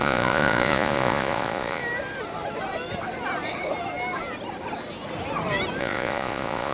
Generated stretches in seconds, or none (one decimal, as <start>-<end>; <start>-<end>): 0.0-1.8; 5.8-6.7